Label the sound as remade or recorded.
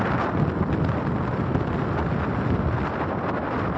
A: recorded